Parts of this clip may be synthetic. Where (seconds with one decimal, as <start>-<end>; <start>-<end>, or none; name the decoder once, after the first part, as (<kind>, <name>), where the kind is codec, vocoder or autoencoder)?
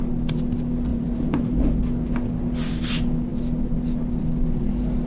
0.9-1.6 (vocoder, BigVGAN v2)